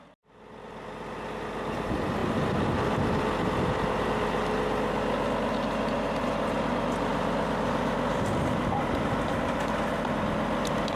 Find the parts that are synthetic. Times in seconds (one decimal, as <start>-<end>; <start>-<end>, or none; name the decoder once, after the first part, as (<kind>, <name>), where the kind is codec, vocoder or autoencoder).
2.2-4.1 (vocoder, BigVGAN v2)